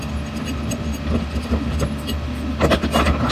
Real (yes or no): yes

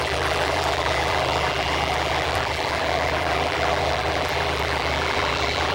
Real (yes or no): no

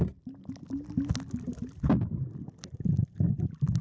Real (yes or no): yes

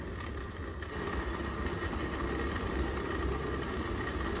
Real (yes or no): yes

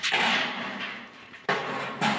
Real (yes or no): yes